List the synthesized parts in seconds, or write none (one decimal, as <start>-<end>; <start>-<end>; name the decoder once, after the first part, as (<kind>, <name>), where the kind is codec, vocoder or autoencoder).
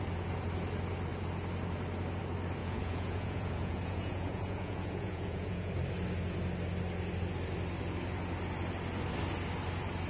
2.6-5.7 (vocoder, Vocos)